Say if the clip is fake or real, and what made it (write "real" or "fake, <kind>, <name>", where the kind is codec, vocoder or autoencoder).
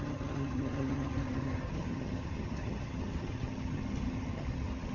fake, vocoder, HiFi-GAN